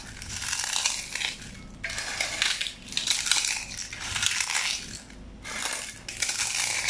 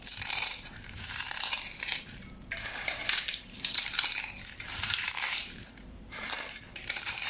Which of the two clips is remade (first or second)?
second